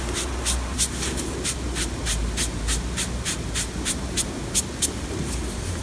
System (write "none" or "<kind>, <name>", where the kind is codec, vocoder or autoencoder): none